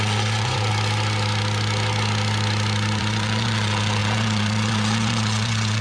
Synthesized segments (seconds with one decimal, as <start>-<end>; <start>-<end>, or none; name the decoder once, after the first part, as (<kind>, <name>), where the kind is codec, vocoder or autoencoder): 0.0-0.7 (vocoder, Vocos); 3.0-5.8